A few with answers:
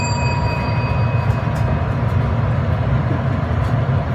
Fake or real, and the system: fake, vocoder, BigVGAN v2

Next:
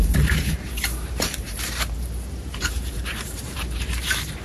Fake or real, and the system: fake, vocoder, BigVGAN v2